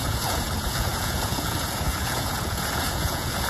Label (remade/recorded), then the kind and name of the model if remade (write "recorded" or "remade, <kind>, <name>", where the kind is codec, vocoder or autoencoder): remade, vocoder, Vocos